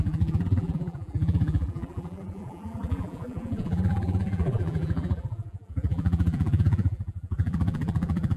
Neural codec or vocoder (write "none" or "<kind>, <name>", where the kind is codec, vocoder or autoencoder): vocoder, BigVGAN v2